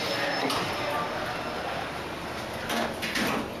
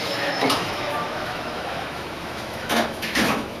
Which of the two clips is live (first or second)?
first